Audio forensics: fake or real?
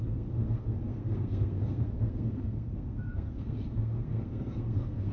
fake